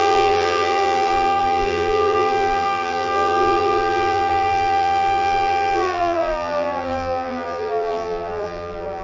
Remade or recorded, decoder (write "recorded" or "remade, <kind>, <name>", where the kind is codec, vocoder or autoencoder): remade, vocoder, BigVGAN v2